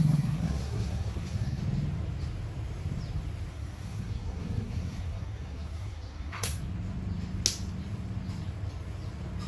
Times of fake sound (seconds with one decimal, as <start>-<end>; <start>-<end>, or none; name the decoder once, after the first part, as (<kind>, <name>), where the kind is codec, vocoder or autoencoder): 0.0-1.6 (codec, SNAC); 3.5-6.6